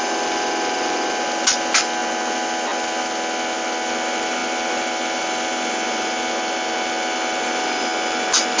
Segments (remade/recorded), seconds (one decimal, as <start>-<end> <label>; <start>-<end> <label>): 0.0-8.6 recorded